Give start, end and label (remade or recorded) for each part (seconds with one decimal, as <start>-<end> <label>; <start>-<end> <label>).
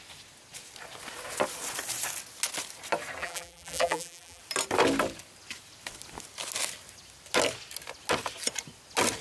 0.0-3.2 recorded; 3.2-4.4 remade; 4.4-9.2 recorded